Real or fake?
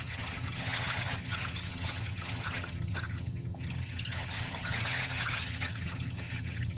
fake